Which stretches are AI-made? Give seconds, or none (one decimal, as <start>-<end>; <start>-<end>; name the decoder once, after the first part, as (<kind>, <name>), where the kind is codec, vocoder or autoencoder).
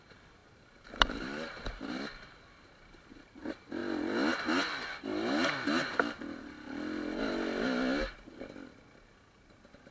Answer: 0.4-1.8 (vocoder, BigVGAN v2)